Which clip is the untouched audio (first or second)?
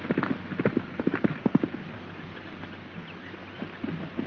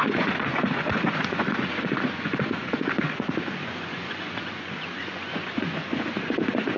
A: first